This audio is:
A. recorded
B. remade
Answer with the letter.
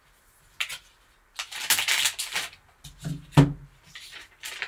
A